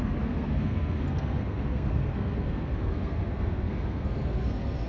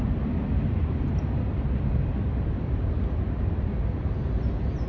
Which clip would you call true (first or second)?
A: second